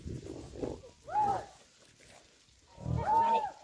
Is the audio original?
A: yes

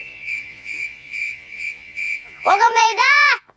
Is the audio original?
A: no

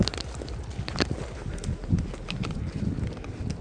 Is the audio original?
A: yes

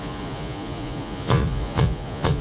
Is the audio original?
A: no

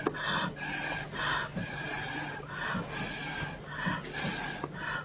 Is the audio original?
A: yes